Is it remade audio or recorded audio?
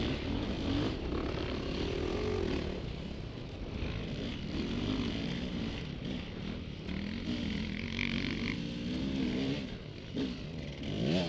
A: recorded